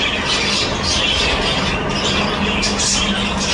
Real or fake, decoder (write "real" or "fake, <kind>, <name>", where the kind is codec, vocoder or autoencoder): real